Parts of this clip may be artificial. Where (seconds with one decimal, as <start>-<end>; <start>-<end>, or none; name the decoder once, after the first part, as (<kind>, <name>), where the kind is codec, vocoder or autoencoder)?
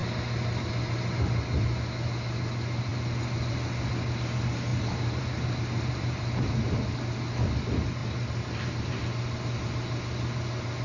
4.7-7.1 (vocoder, BigVGAN v2); 8.0-8.9